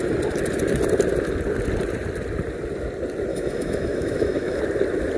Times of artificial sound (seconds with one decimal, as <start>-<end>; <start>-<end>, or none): 3.3-4.6